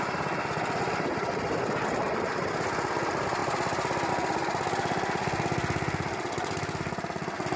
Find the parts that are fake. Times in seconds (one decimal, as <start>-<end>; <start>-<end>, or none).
none